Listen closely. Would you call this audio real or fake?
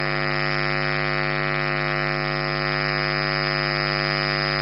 real